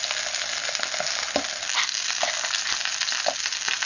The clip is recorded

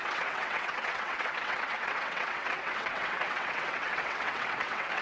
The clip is remade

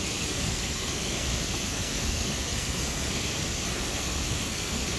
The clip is remade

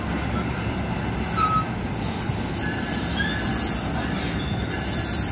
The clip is recorded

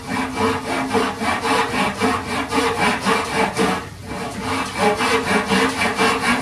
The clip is recorded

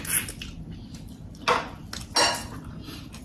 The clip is recorded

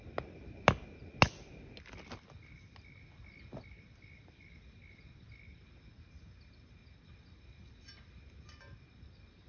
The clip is recorded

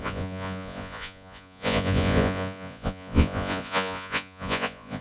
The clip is remade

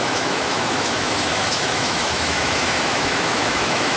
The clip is remade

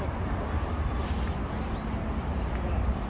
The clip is recorded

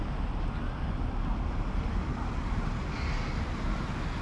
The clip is recorded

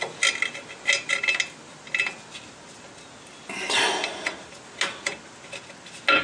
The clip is recorded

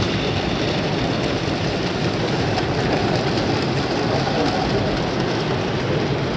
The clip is remade